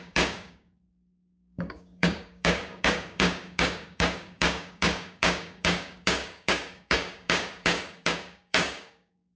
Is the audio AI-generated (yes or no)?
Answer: yes